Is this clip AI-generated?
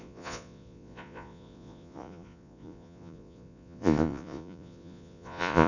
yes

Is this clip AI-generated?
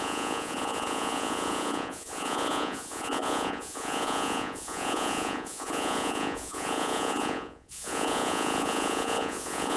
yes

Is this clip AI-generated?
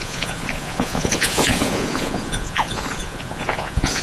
yes